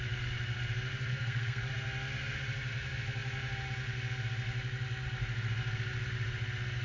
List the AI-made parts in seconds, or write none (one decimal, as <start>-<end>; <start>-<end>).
1.1-1.7